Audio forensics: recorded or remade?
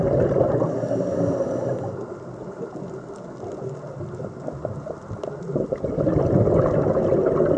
recorded